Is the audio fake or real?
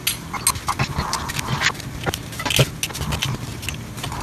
real